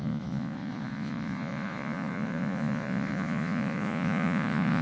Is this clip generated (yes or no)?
yes